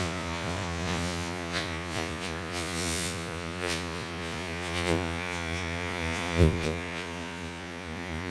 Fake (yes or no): yes